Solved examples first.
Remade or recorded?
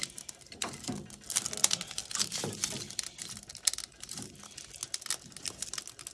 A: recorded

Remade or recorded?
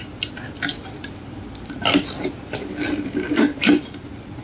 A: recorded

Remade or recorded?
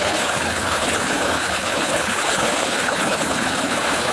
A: remade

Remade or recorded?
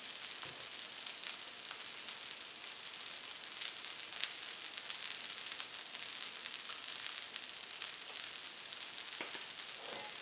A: recorded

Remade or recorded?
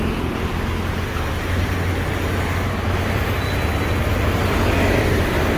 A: recorded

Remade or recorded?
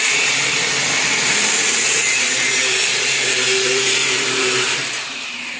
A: remade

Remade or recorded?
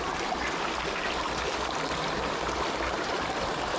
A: recorded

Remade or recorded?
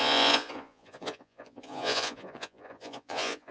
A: remade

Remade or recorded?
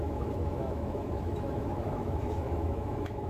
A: remade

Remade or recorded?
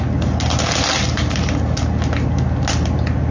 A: recorded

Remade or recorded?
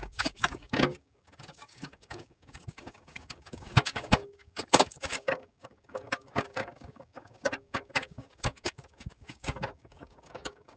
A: remade